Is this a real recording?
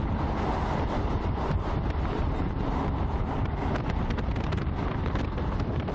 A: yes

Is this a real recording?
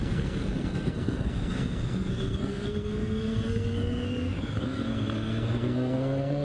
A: no